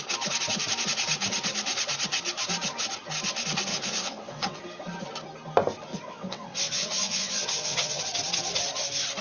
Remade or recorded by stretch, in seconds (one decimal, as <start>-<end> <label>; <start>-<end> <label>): 0.0-3.7 recorded; 3.7-4.6 remade; 4.6-5.9 recorded; 5.9-8.0 remade; 8.0-9.2 recorded